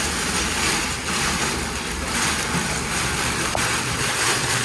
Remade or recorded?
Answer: remade